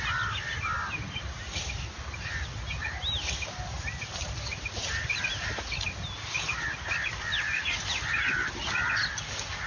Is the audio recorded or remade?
recorded